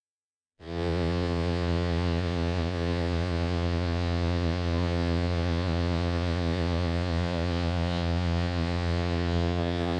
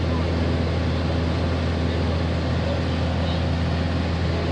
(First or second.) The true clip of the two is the second